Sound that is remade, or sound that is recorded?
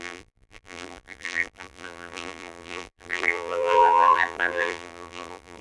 remade